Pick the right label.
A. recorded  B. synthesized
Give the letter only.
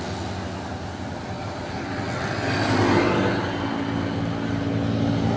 A